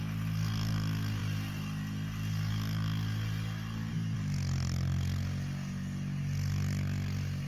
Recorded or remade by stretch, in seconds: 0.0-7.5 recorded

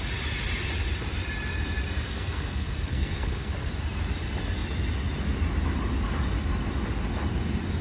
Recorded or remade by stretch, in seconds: 0.0-2.0 recorded; 2.0-3.7 remade; 3.7-7.8 recorded

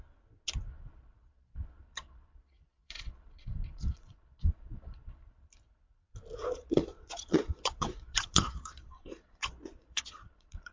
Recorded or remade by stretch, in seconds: 0.0-0.7 recorded; 0.7-5.2 remade; 5.2-6.4 recorded; 6.4-10.7 remade

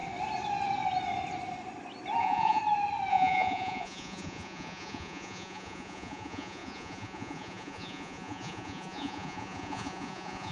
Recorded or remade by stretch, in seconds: 0.0-2.2 recorded; 2.2-2.6 remade; 2.6-3.1 recorded; 3.1-10.5 remade